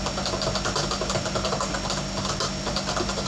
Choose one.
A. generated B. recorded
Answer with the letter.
B